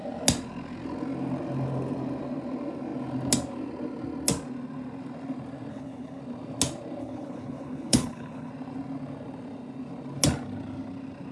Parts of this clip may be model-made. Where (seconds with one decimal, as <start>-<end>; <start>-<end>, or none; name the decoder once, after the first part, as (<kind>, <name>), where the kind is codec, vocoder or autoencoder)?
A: 5.7-6.2 (codec, HILCodec); 7.0-8.5